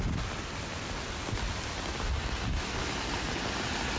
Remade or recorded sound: recorded